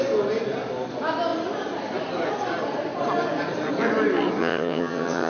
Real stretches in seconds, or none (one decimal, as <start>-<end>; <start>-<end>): 0.0-4.4